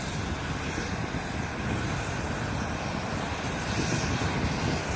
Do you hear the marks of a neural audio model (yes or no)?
no